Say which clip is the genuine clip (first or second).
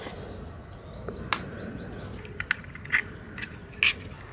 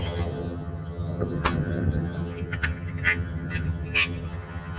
first